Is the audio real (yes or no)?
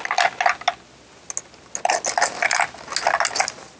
yes